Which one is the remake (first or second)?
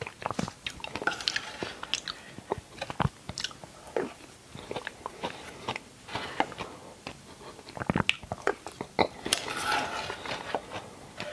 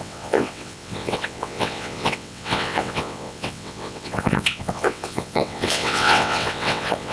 second